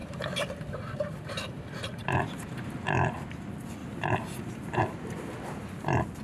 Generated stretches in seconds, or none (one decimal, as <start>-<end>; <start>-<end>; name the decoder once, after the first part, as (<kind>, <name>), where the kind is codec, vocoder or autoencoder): 0.0-2.8 (vocoder, BigVGAN v2); 3.8-4.8